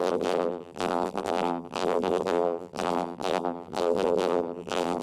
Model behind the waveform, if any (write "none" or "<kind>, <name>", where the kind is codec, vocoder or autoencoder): vocoder, BigVGAN v2